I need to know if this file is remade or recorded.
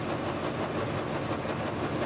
recorded